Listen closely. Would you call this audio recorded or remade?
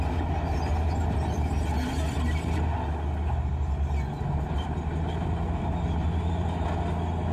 recorded